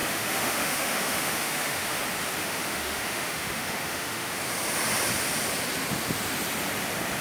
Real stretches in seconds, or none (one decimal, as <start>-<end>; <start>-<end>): 2.0-2.4; 4.4-7.2